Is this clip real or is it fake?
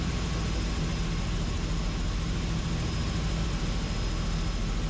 real